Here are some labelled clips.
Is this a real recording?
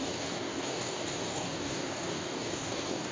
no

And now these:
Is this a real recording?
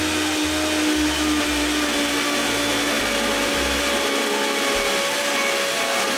yes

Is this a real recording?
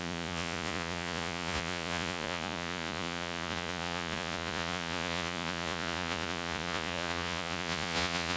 no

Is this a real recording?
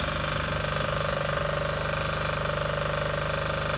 yes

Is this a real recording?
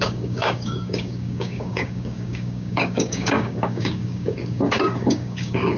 no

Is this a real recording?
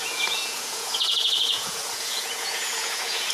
no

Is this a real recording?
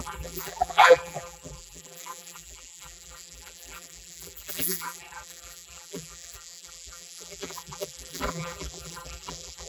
no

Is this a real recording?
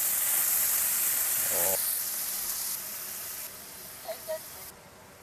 yes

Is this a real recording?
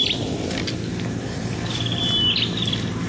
yes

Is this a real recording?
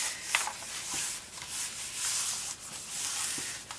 yes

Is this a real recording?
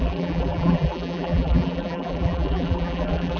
no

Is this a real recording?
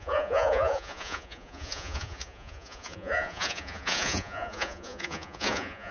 no